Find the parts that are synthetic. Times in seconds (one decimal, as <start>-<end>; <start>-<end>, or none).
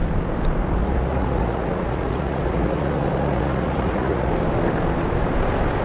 0.8-4.3